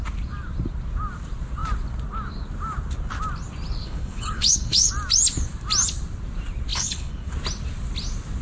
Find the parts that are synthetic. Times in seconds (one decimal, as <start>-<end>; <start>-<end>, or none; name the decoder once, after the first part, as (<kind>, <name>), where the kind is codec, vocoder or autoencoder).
3.8-4.9 (codec, HILCodec); 6.7-7.3